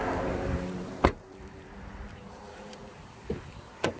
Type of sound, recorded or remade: remade